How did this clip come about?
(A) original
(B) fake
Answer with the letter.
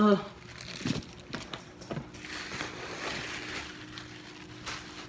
A